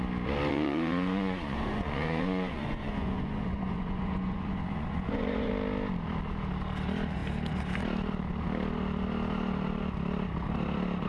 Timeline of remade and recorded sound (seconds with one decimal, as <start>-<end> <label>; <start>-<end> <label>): 0.0-0.5 recorded; 0.5-5.5 remade; 5.5-11.1 recorded